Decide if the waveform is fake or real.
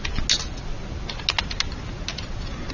real